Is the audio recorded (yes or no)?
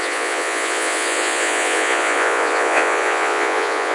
no